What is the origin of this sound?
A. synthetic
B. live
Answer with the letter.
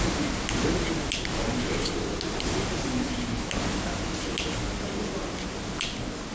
B